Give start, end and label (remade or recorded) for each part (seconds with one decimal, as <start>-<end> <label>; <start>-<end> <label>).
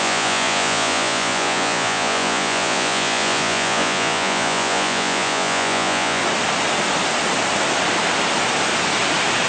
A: 0.0-6.2 remade; 6.2-9.5 recorded